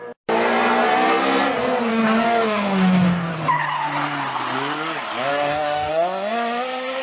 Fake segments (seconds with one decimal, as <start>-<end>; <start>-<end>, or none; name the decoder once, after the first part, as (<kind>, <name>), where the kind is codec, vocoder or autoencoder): 1.9-3.3 (codec, DAC); 5.3-5.9